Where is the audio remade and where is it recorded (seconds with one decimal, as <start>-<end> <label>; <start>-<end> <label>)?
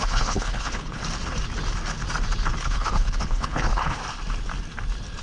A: 0.0-1.0 remade; 1.0-2.6 recorded; 2.6-4.0 remade; 4.0-5.2 recorded